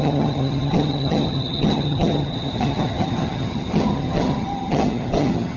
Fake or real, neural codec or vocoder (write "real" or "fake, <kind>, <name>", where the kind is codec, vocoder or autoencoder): fake, vocoder, HiFi-GAN